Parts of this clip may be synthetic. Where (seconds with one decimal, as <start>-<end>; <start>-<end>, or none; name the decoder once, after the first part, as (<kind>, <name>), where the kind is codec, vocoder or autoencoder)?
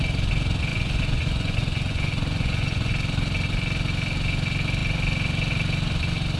0.7-2.9 (vocoder, Vocos)